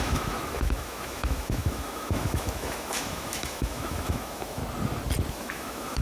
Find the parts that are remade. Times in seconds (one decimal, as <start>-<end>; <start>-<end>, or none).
0.0-4.6; 5.3-6.0